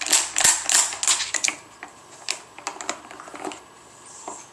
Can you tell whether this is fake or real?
real